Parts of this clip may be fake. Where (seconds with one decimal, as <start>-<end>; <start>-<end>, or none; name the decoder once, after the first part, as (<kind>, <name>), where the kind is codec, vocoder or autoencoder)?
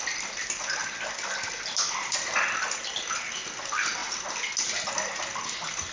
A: none